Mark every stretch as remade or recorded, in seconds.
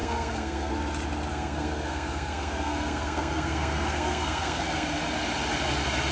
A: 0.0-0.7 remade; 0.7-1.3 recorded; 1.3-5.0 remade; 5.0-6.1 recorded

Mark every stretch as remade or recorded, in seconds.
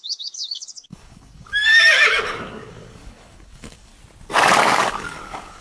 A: 0.0-3.9 remade; 3.9-4.6 recorded; 4.6-5.6 remade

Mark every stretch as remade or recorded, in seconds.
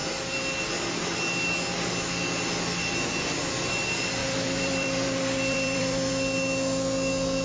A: 0.0-4.2 recorded; 4.2-6.1 remade; 6.1-7.4 recorded